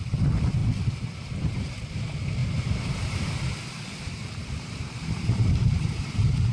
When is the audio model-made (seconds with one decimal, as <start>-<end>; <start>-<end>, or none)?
0.6-1.9; 2.4-3.3; 4.4-6.5